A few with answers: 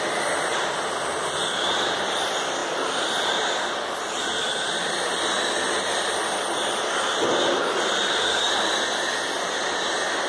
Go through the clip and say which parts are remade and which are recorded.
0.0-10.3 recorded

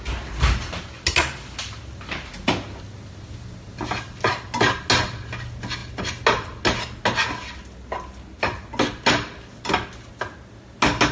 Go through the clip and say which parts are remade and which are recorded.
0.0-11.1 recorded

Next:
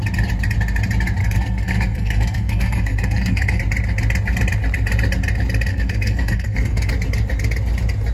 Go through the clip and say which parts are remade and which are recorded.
0.0-1.2 recorded; 1.2-3.6 remade; 3.6-5.7 recorded; 5.7-6.9 remade; 6.9-8.1 recorded